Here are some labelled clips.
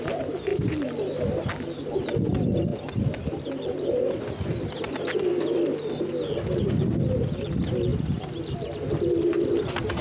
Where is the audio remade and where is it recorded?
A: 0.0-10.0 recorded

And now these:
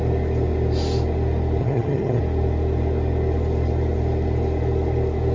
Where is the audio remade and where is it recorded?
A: 0.0-1.6 recorded; 1.6-2.2 remade; 2.2-5.3 recorded

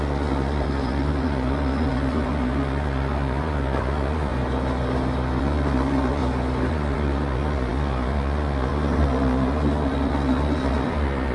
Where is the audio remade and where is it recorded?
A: 0.0-4.3 remade; 4.3-5.4 recorded; 5.4-6.2 remade; 6.2-6.7 recorded; 6.7-11.3 remade

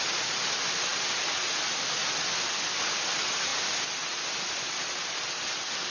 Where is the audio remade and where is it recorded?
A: 0.0-5.9 recorded

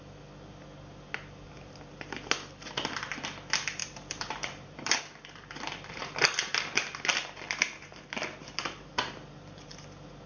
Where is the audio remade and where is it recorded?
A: 0.0-3.8 recorded; 3.8-5.0 remade; 5.0-10.3 recorded

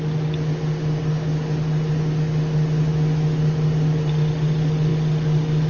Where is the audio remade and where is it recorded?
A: 0.0-2.9 recorded; 2.9-3.4 remade; 3.4-5.7 recorded

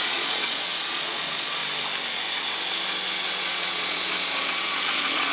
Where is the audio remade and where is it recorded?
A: 0.0-1.6 remade; 1.6-3.4 recorded; 3.4-5.3 remade